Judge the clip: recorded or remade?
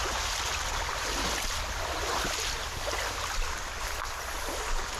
recorded